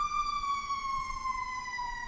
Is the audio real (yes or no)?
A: no